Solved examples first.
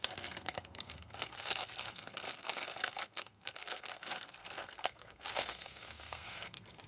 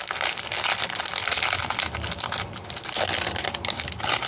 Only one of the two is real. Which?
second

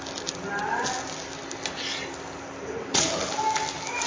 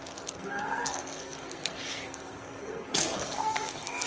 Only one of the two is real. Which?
first